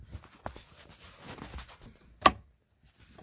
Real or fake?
real